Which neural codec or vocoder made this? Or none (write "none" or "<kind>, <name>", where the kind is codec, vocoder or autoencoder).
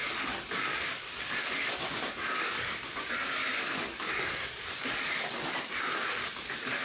codec, DAC